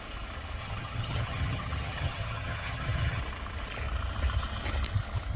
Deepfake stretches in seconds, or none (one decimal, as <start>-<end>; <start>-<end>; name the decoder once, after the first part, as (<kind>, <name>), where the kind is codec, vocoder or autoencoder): 0.6-3.2 (vocoder, HiFi-GAN)